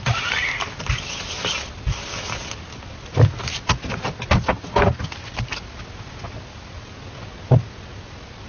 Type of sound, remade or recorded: recorded